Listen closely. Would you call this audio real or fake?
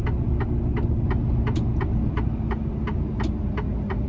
real